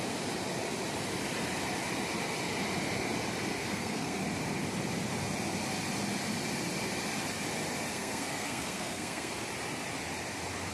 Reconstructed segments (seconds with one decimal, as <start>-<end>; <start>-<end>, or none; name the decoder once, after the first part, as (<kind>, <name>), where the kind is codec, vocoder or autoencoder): 3.6-4.2 (codec, SNAC); 7.9-9.3